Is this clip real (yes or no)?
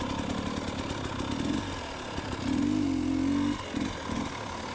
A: yes